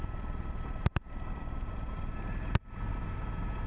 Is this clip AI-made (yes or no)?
yes